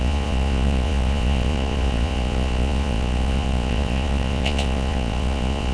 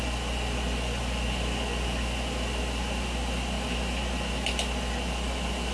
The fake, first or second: first